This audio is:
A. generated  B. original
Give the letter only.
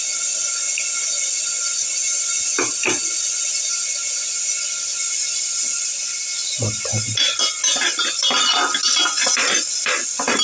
B